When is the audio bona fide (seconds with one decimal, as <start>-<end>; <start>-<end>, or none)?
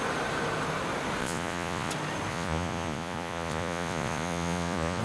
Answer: 0.0-1.2; 1.9-2.3